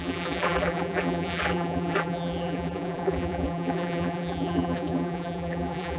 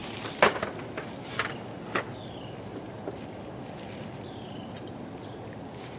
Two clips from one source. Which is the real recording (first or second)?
second